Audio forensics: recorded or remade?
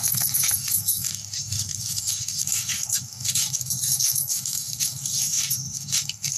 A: remade